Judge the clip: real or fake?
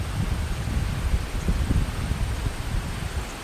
real